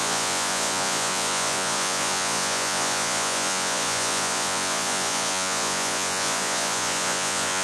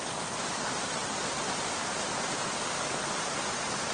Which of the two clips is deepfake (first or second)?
first